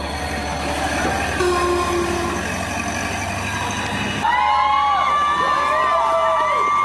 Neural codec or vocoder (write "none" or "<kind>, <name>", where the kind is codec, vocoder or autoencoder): none